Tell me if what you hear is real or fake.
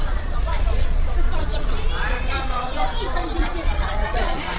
fake